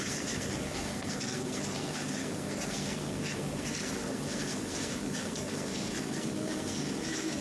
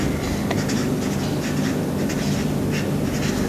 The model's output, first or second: first